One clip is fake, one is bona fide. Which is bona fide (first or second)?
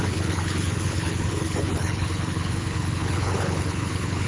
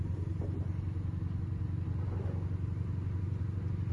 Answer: second